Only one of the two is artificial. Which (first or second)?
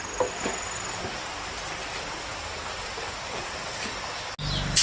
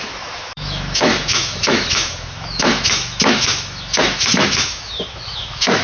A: second